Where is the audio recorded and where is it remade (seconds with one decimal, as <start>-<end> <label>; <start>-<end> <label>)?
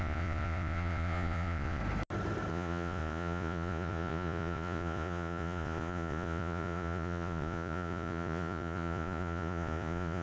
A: 0.0-1.8 remade; 1.8-2.5 recorded; 2.5-10.2 remade